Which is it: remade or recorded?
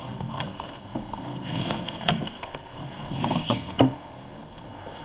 remade